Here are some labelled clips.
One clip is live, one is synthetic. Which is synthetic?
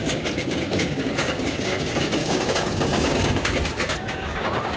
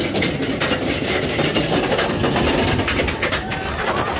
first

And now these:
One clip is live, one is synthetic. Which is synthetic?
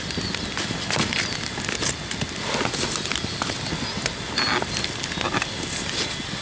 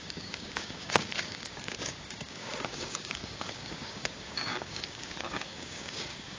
second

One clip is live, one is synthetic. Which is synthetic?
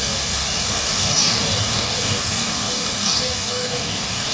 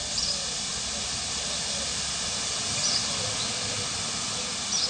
first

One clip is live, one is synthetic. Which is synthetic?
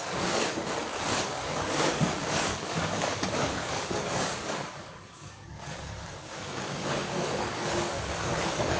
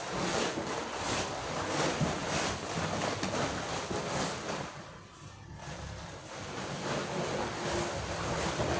first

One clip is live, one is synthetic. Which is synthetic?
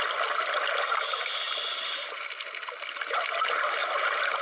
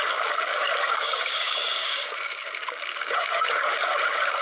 second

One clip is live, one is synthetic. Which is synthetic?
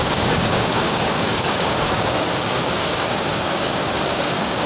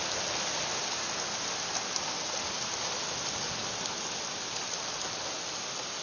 first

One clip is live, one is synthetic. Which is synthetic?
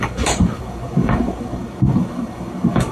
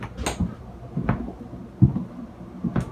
first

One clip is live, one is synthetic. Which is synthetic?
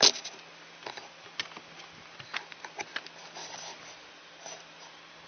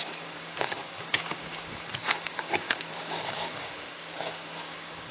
second